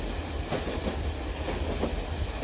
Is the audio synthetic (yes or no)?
no